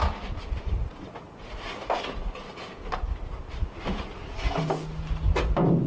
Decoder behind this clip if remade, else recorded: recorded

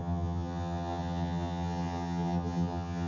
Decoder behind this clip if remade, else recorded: remade, vocoder, HiFi-GAN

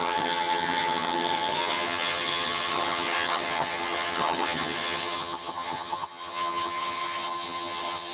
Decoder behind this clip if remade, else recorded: remade, vocoder, HiFi-GAN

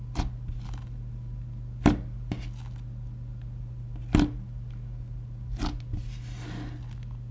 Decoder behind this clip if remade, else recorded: recorded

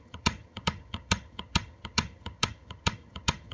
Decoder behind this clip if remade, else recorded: remade, vocoder, HiFi-GAN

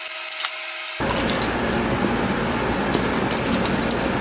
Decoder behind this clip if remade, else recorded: recorded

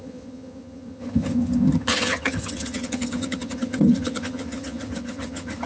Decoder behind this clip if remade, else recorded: remade, vocoder, HiFi-GAN